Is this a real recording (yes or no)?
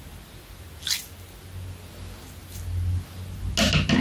yes